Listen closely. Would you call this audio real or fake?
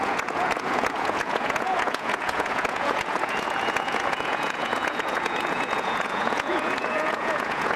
fake